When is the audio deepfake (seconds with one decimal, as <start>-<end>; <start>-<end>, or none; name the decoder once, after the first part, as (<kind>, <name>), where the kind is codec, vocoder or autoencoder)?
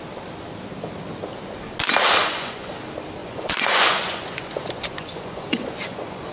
2.2-2.7 (vocoder, Vocos); 3.2-6.3